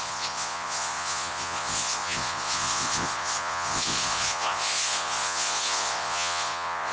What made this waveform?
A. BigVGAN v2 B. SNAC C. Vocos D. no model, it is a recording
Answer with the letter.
C